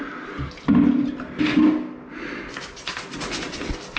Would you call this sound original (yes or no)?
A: yes